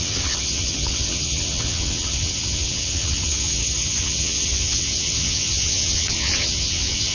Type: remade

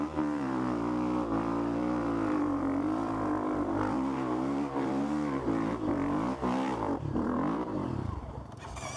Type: remade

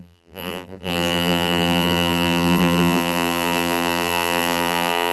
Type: remade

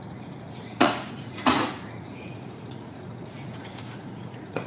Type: remade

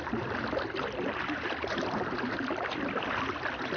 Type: remade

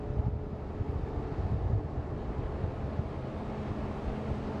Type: recorded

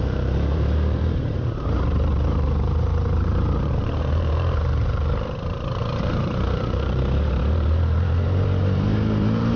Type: remade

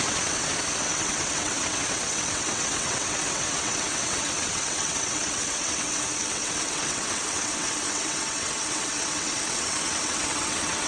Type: remade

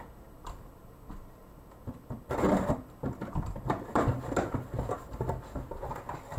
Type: recorded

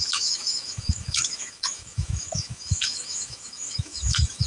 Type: remade